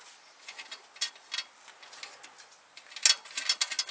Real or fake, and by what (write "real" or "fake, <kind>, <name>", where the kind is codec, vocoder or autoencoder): real